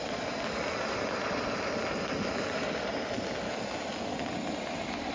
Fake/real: real